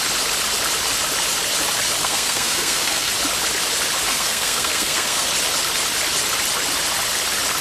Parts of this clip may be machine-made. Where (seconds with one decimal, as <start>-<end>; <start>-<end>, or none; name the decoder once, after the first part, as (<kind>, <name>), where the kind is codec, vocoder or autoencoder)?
2.0-3.1 (codec, SNAC); 4.1-5.3